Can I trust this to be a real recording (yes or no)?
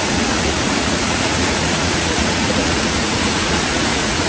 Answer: no